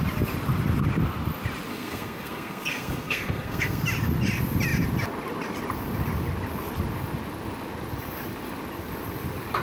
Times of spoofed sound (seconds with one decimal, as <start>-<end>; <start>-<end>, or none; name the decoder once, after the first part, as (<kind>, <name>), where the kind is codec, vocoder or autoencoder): 1.7-3.8 (codec, SNAC)